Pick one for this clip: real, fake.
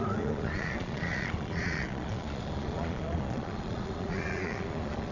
fake